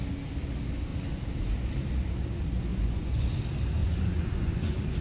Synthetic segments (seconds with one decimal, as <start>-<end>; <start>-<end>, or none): 2.7-3.4; 3.8-5.0